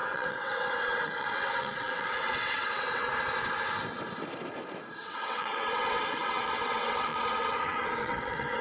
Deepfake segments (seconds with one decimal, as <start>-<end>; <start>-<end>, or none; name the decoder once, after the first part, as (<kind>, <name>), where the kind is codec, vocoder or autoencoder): 0.0-3.1 (vocoder, WaveNeXt); 5.0-8.6